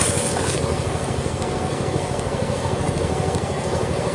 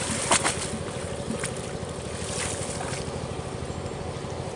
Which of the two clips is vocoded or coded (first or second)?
first